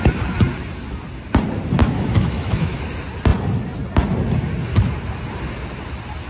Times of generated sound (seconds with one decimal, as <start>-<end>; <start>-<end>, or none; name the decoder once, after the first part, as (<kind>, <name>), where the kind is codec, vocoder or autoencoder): 1.8-2.8 (autoencoder, DAC-VAE)